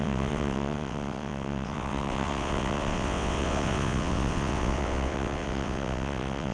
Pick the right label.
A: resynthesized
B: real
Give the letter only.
A